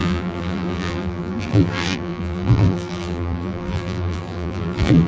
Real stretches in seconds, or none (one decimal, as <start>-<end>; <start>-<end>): none